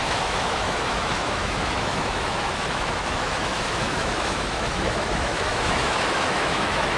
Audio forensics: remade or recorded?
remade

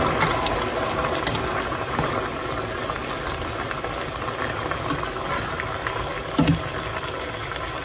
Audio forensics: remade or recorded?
recorded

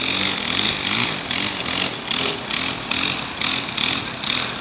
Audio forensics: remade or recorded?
recorded